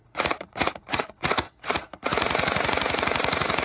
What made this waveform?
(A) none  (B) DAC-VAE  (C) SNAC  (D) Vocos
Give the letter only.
D